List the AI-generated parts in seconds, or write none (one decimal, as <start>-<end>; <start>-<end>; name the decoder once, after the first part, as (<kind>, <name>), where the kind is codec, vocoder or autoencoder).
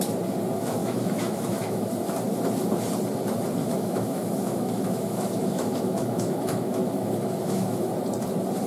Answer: 0.8-1.9 (autoencoder, DAC-VAE); 3.6-7.9